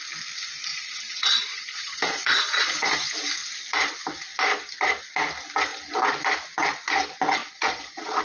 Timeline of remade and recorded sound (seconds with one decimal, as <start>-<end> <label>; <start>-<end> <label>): 0.0-0.7 recorded; 0.7-2.9 remade; 2.9-7.4 recorded; 7.4-8.2 remade